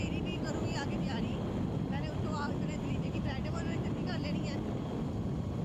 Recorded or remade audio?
recorded